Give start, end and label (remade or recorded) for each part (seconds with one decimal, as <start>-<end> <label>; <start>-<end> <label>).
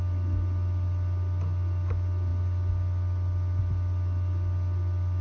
0.0-5.2 recorded